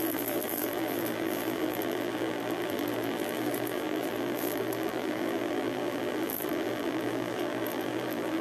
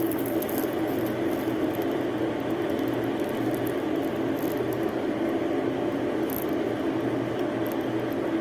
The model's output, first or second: first